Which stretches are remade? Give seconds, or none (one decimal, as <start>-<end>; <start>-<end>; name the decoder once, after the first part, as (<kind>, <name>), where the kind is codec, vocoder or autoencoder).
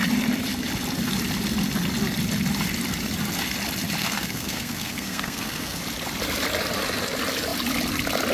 4.0-5.8 (codec, SNAC)